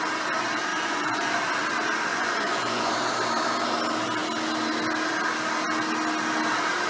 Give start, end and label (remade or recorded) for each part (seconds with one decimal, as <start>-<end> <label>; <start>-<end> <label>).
0.0-0.7 recorded; 0.7-1.3 remade; 1.3-2.1 recorded; 2.1-2.9 remade; 2.9-6.9 recorded